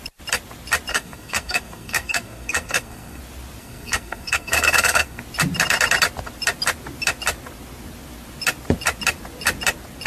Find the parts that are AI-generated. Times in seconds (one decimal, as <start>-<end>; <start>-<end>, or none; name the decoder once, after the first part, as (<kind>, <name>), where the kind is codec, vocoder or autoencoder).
0.9-3.2 (codec, SNAC); 3.6-5.2